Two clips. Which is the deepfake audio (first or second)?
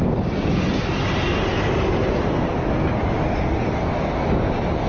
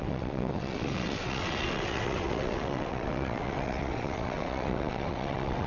second